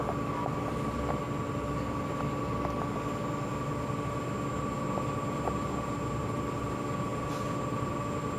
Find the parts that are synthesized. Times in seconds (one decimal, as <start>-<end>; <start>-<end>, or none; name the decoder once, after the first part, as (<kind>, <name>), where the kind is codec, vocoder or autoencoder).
none